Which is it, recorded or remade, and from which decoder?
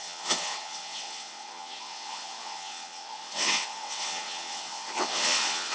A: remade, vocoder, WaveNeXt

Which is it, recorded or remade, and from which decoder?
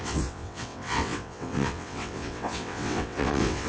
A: remade, vocoder, WaveNeXt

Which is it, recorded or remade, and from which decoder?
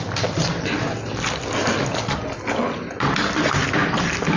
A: recorded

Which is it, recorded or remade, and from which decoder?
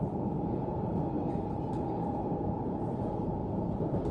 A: recorded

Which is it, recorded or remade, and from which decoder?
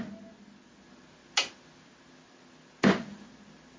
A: recorded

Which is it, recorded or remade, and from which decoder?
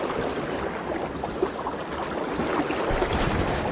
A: recorded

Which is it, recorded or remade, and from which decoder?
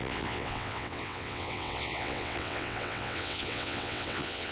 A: remade, vocoder, WaveNeXt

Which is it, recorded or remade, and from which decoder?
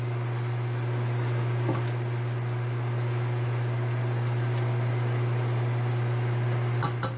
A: recorded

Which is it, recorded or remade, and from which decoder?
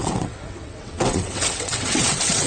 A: remade, vocoder, WaveNeXt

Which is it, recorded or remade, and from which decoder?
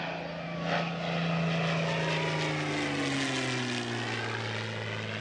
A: recorded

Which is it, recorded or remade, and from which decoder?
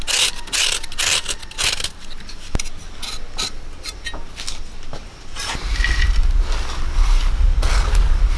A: recorded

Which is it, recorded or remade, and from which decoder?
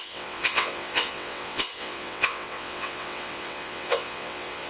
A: remade, vocoder, WaveNeXt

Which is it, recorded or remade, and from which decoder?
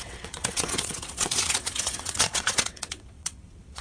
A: remade, vocoder, WaveNeXt